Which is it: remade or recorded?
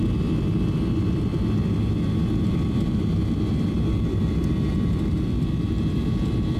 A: remade